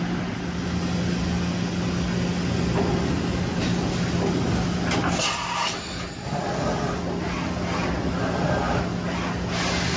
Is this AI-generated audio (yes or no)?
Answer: no